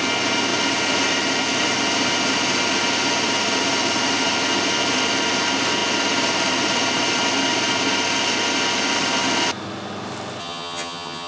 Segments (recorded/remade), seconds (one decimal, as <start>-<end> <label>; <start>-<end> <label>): 0.0-10.4 recorded; 10.4-11.3 remade